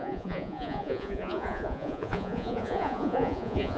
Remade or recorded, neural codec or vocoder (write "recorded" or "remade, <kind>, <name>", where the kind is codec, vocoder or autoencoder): remade, vocoder, Vocos